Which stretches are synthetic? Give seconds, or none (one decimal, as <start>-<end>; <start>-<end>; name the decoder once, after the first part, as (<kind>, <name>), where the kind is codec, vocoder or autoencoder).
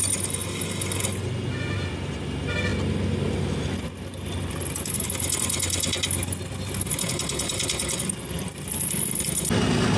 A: none